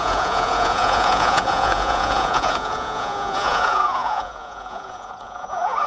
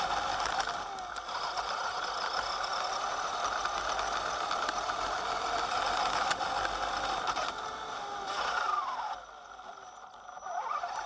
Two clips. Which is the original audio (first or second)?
second